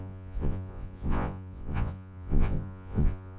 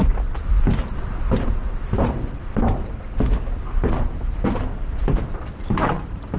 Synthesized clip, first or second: first